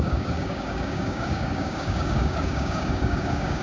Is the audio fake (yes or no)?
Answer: yes